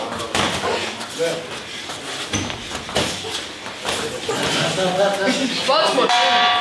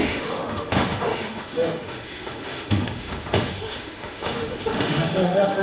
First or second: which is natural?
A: first